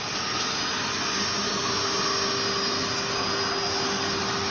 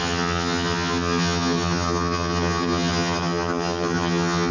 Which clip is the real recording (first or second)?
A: first